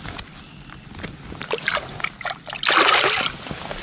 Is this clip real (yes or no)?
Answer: yes